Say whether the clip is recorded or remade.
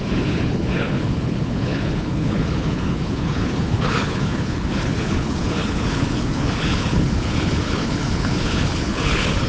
remade